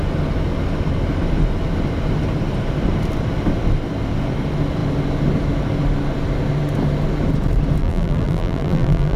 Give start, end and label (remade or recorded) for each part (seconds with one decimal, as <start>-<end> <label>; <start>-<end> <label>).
0.0-7.8 recorded; 7.8-9.2 remade